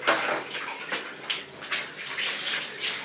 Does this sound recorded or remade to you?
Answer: recorded